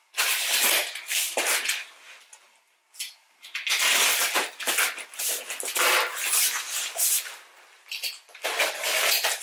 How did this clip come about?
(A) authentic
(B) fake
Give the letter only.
A